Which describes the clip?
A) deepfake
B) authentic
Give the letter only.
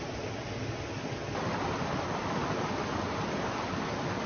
B